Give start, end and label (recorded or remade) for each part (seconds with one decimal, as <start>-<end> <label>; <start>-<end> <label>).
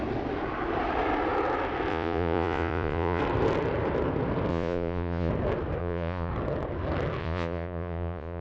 0.0-1.9 recorded; 1.9-3.2 remade; 3.2-4.5 recorded; 4.5-5.3 remade; 5.3-5.8 recorded; 5.8-6.3 remade; 6.3-7.2 recorded; 7.2-8.4 remade